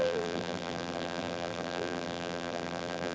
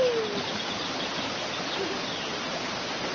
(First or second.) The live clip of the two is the second